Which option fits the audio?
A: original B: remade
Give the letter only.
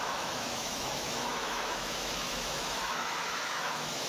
B